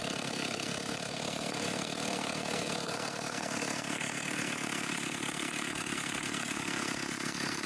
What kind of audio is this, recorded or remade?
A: remade